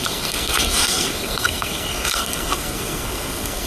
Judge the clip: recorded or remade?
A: remade